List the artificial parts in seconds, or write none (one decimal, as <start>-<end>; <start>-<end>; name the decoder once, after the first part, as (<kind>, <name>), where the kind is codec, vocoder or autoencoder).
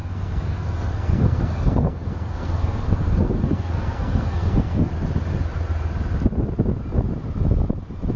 0.0-4.9 (codec, SNAC)